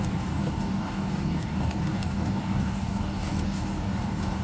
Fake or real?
fake